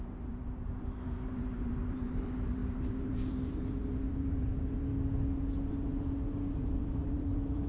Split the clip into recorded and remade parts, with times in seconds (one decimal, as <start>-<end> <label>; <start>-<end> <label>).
0.0-4.9 remade; 4.9-5.7 recorded; 5.7-7.7 remade